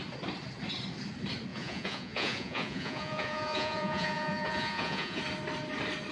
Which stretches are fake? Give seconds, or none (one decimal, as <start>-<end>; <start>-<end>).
1.5-5.2